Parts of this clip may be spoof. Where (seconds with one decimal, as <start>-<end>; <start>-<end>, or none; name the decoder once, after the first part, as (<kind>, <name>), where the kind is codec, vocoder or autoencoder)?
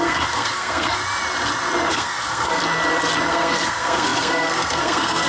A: 0.0-1.0 (codec, SNAC); 1.9-2.6; 3.3-5.3